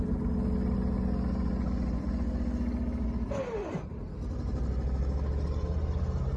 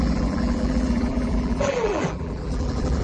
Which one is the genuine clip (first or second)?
first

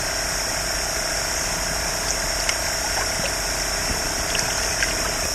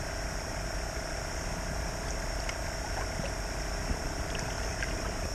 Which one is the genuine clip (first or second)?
first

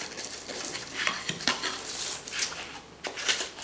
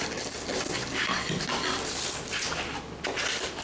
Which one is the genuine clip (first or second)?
second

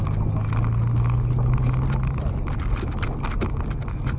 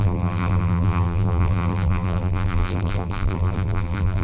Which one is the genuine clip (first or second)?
first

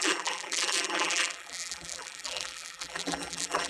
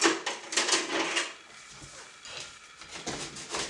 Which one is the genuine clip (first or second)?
second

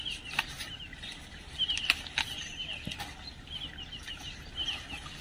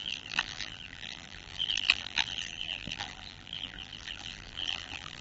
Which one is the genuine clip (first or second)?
first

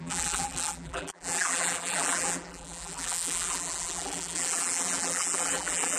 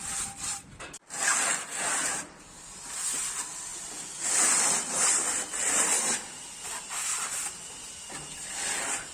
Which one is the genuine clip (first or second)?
second